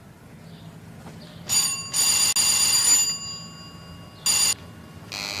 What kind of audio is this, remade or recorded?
recorded